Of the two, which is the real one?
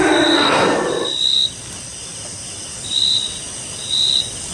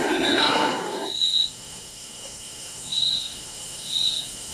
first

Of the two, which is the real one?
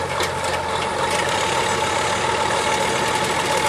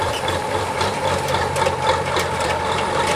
first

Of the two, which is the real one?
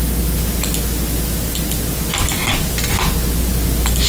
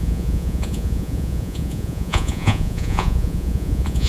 first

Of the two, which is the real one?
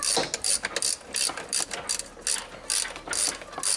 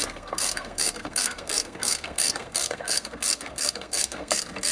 first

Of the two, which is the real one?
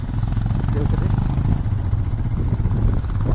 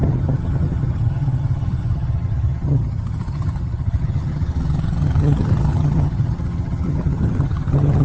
first